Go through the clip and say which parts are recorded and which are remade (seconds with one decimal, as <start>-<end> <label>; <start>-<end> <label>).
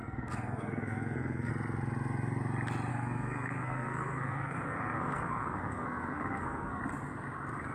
0.0-1.5 remade; 1.5-2.9 recorded; 2.9-6.8 remade; 6.8-7.7 recorded